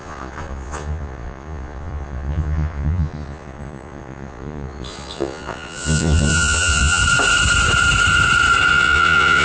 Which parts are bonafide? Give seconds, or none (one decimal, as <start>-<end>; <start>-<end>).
7.0-8.7